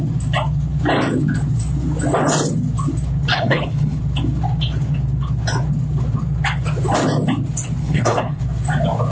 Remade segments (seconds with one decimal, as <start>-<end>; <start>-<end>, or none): 3.3-4.0; 7.8-8.4